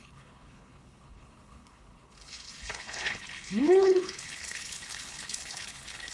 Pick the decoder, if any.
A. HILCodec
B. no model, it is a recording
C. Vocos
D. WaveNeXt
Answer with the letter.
A